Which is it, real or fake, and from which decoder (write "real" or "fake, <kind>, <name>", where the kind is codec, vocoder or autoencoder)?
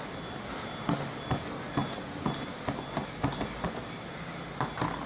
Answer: real